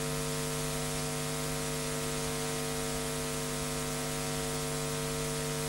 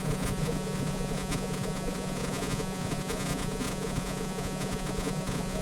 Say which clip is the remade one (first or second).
second